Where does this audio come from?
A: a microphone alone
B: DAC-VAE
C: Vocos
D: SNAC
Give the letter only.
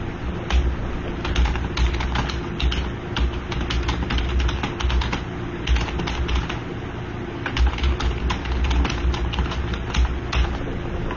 A